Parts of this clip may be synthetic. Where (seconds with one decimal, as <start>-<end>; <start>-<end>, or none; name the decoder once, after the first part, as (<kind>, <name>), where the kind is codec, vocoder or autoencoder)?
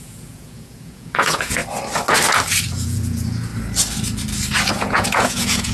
0.0-1.6 (vocoder, Vocos); 2.7-3.5; 4.7-5.7